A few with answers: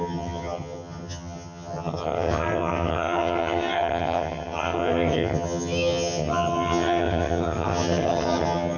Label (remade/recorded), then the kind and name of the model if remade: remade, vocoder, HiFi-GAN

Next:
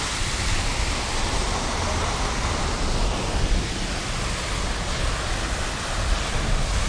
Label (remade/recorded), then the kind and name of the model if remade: recorded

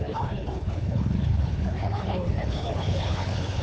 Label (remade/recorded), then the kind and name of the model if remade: remade, codec, HILCodec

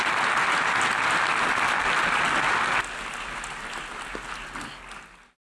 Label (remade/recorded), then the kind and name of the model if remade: recorded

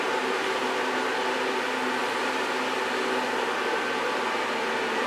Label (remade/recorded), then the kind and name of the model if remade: recorded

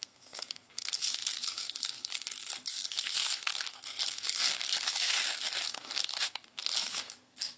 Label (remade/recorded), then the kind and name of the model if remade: remade, codec, SNAC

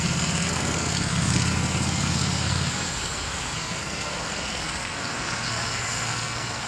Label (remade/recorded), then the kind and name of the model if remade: remade, codec, SNAC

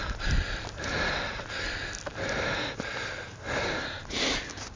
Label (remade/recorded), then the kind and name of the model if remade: recorded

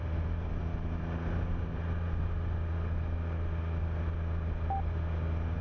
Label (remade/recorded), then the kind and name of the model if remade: recorded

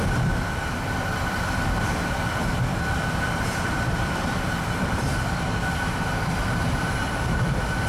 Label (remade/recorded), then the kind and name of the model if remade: remade, vocoder, BigVGAN v2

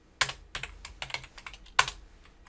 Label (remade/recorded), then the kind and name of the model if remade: recorded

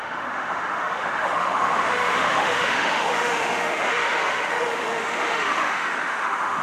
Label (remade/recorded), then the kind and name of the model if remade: remade, autoencoder, DAC-VAE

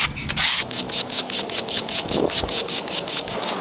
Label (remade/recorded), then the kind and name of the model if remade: remade, codec, DAC